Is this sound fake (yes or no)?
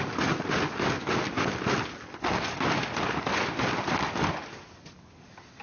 no